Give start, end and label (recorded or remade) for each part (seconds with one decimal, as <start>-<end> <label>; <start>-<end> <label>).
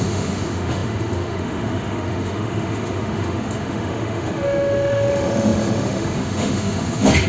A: 0.0-7.3 remade